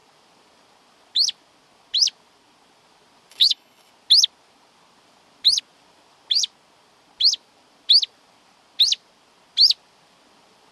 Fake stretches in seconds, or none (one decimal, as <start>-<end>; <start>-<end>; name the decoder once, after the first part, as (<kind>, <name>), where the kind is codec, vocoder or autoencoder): 3.3-3.9 (codec, HILCodec)